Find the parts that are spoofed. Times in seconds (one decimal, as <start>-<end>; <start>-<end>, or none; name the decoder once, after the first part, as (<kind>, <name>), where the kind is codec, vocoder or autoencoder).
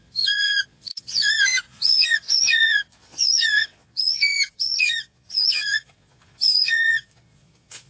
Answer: 0.0-7.9 (vocoder, Vocos)